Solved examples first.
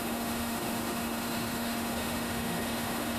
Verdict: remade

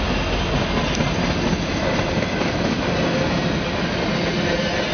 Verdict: recorded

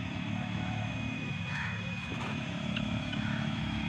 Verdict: remade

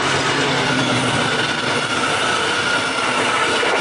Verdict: recorded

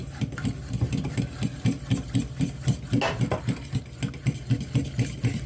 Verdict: recorded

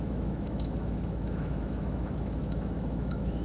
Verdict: remade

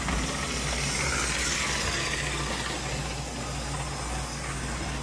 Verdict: recorded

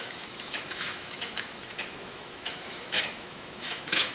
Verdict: remade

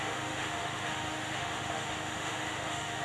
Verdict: remade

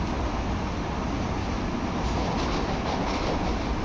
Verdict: recorded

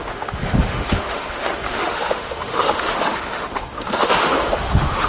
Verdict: remade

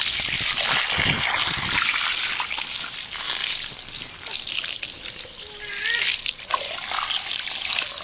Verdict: recorded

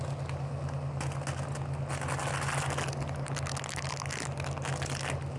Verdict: recorded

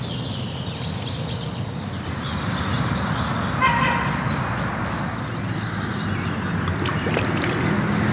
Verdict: recorded